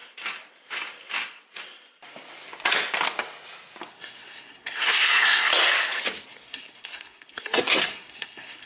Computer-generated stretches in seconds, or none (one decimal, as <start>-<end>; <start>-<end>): 3.9-5.5; 6.3-8.7